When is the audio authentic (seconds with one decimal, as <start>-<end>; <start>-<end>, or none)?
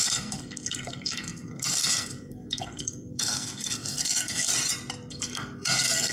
4.5-5.1